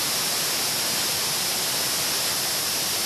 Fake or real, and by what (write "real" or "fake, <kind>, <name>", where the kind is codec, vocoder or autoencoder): real